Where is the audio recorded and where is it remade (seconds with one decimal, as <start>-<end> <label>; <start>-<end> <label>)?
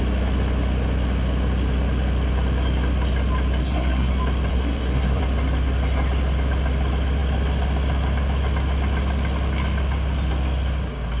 0.0-3.6 recorded; 3.6-4.1 remade; 4.1-4.5 recorded; 4.5-5.2 remade; 5.2-11.2 recorded